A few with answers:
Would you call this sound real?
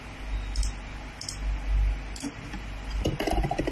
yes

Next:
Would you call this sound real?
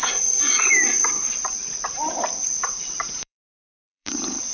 no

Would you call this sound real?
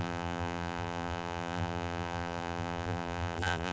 no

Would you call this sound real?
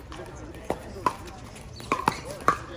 yes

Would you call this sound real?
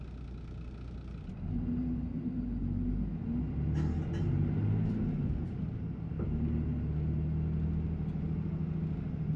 yes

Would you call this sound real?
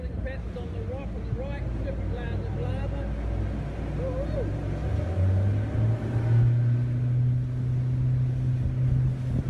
yes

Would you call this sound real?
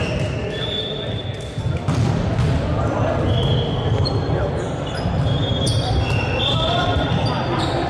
no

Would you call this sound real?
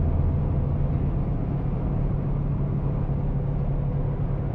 yes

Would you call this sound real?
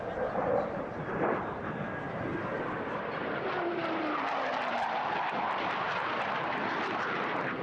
no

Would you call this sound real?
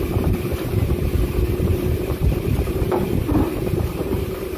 no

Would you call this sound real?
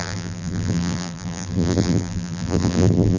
no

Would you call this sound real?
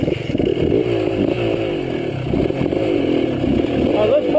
yes